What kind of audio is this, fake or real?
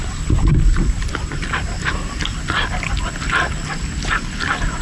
real